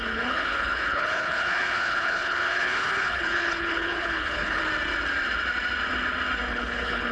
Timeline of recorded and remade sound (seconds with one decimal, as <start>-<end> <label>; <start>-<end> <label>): 0.0-4.6 remade; 4.6-6.5 recorded; 6.5-7.1 remade